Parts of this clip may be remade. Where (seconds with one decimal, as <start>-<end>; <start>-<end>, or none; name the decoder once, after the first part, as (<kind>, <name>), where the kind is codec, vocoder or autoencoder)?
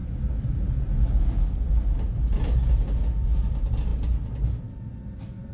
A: none